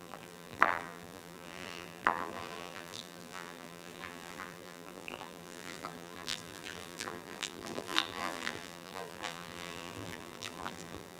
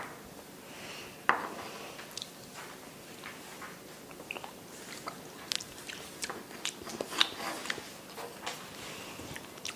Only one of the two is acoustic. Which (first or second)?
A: second